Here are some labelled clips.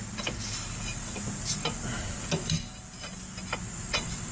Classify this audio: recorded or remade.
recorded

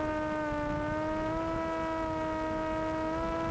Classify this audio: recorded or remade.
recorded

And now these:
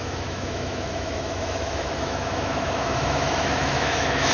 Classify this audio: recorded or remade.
remade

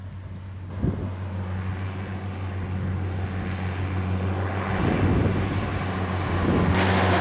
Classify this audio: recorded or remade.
recorded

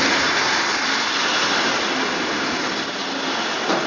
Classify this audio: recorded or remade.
recorded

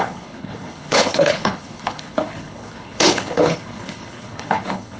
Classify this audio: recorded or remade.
remade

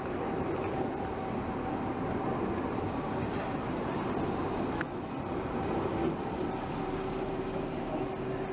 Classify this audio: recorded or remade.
recorded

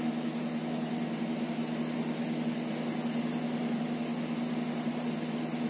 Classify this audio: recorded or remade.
recorded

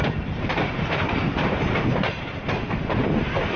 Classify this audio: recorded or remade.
recorded